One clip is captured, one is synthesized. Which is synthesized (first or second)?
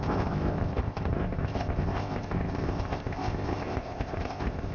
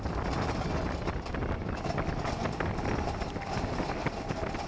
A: first